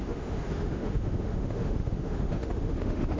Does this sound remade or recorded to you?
remade